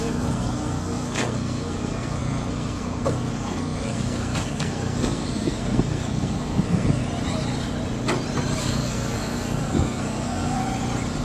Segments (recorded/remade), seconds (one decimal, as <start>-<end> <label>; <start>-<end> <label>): 0.0-7.0 remade; 7.0-8.6 recorded; 8.6-10.6 remade; 10.6-11.2 recorded

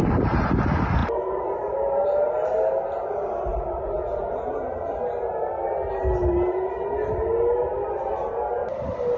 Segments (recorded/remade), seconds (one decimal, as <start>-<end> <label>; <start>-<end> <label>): 0.0-1.0 recorded; 1.0-2.3 remade; 2.3-8.6 recorded; 8.6-9.2 remade

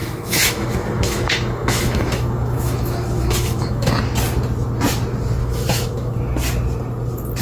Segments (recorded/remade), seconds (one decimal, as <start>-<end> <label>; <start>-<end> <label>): 0.0-3.9 remade; 3.9-5.4 recorded; 5.4-6.1 remade; 6.1-7.4 recorded